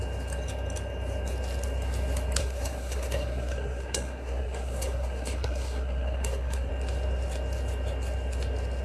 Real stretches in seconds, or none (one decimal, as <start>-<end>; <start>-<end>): 0.0-2.4; 6.7-8.8